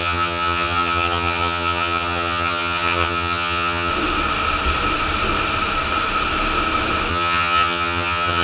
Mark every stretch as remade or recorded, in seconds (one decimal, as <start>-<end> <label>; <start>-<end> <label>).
0.0-3.9 remade; 3.9-7.1 recorded; 7.1-8.4 remade